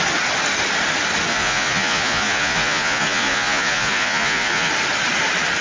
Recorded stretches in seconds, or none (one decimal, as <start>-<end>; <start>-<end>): 0.0-1.3; 4.7-5.6